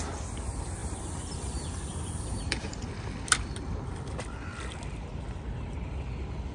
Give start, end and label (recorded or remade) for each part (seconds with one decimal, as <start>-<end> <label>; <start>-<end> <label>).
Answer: 0.0-1.9 recorded; 1.9-2.8 remade; 2.8-6.5 recorded